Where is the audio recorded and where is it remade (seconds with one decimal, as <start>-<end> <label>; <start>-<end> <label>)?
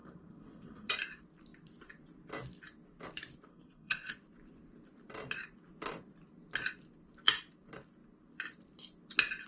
0.0-0.9 remade; 0.9-3.5 recorded; 3.5-4.1 remade; 4.1-9.5 recorded